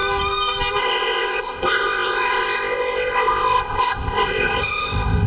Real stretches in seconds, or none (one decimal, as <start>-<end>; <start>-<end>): 0.0-0.8